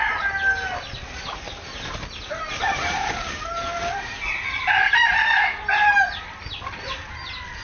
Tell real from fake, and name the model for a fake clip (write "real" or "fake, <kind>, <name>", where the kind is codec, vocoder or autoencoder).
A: real